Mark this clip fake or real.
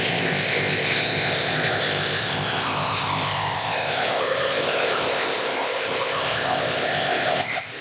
fake